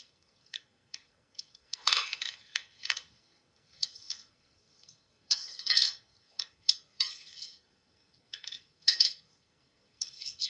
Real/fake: fake